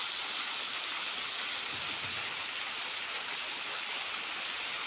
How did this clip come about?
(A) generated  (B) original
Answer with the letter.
B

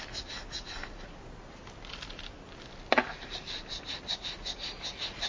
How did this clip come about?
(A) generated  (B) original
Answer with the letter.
B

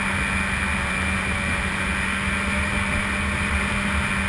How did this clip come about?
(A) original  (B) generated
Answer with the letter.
A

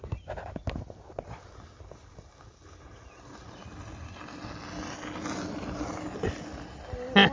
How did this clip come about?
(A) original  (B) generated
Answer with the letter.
A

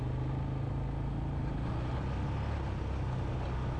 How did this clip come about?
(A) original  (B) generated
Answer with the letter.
A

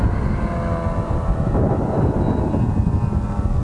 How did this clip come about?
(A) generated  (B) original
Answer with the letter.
B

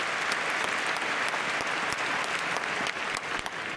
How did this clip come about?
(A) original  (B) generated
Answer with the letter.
A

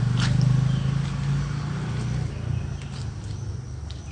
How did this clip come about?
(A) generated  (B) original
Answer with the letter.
B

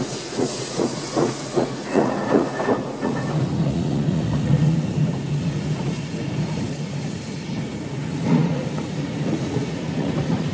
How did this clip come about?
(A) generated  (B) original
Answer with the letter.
A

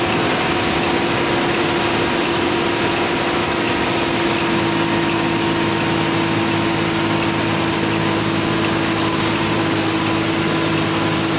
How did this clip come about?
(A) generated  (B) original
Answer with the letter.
B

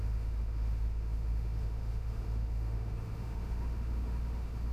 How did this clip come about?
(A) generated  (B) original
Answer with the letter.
A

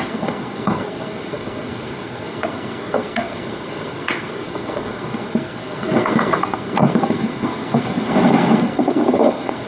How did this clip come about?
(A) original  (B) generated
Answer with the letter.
B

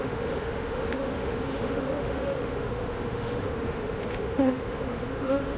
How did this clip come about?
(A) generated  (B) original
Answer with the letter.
A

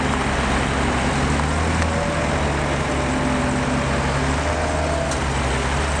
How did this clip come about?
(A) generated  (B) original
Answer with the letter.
B